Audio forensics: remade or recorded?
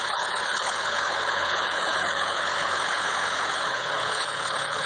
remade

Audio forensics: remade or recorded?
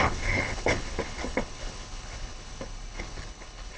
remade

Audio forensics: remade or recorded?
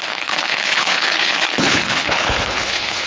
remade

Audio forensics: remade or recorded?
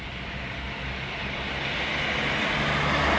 recorded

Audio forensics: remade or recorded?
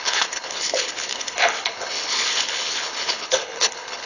remade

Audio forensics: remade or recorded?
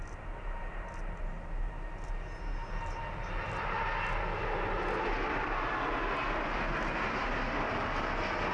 recorded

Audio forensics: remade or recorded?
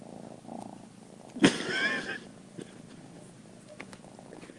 recorded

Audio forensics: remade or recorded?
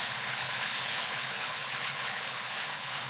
remade